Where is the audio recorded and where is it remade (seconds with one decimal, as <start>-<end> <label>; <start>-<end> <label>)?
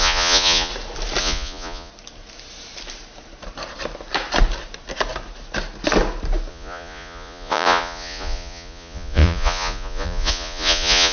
0.0-0.7 remade; 0.7-1.2 recorded; 1.2-1.9 remade; 1.9-6.5 recorded; 6.5-11.1 remade